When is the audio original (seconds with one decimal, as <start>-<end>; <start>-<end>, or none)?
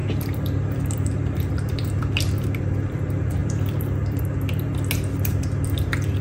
4.7-5.4